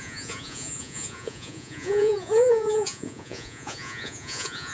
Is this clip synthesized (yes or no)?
yes